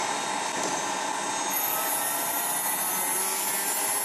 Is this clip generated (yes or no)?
no